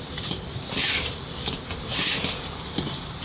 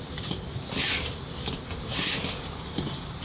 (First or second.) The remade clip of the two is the first